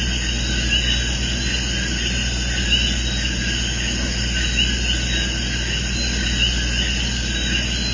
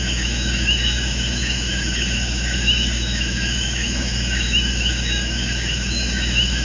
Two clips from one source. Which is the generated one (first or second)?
second